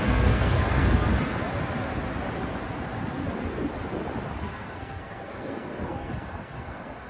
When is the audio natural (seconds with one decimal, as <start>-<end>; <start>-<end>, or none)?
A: 1.1-4.4